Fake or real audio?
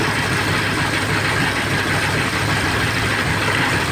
real